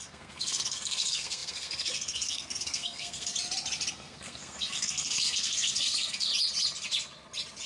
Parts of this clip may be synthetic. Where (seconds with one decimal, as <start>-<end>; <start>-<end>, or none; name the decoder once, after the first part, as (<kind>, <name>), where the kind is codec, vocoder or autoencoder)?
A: 0.0-3.3 (codec, SNAC); 3.9-6.3